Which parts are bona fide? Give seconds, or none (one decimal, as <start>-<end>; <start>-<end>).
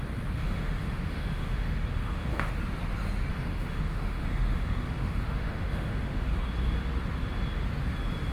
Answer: 0.0-0.4; 2.5-3.3; 6.5-8.3